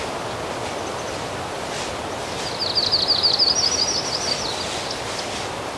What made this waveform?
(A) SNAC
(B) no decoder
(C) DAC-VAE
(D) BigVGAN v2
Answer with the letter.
B